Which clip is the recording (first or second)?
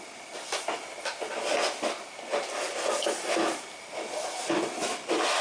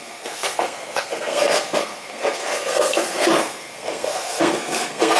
first